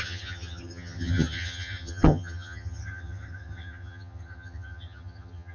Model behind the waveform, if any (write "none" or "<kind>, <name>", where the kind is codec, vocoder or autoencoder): vocoder, HiFi-GAN